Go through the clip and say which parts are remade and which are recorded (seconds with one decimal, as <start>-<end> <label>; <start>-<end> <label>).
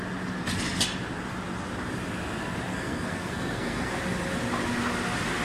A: 0.0-2.7 recorded; 2.7-3.9 remade; 3.9-5.4 recorded